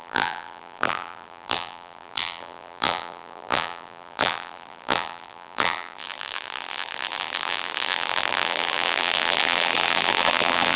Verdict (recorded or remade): remade